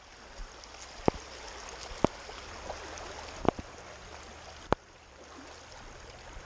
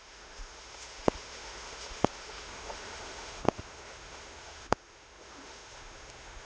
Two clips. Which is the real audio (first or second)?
first